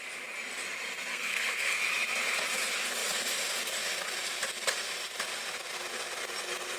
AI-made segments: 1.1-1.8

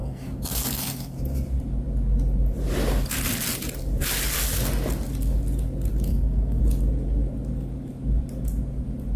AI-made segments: 0.0-1.2; 6.1-6.6

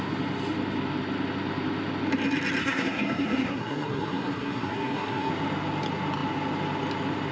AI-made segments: 2.6-5.3